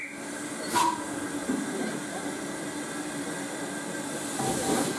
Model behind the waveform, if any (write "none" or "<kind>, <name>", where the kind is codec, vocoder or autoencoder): none